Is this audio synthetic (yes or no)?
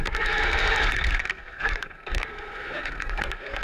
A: yes